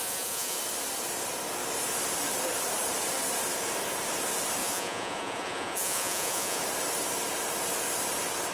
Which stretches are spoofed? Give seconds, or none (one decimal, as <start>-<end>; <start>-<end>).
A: 0.0-0.6; 4.6-6.6